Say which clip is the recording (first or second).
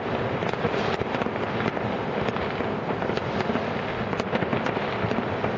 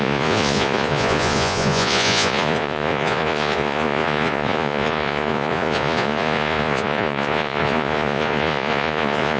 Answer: first